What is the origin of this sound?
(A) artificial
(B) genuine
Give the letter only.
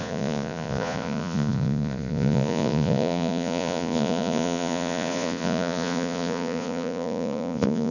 A